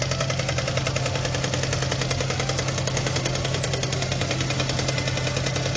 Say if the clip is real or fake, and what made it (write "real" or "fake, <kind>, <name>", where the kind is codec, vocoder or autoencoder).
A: real